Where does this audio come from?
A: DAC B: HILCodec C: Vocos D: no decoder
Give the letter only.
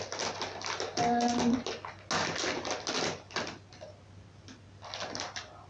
D